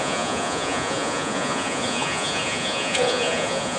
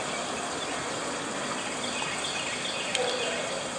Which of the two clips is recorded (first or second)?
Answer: second